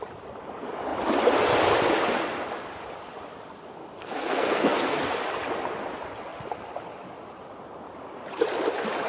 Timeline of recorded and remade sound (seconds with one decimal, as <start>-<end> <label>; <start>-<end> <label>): 0.0-4.0 recorded; 4.0-5.0 remade; 5.0-9.1 recorded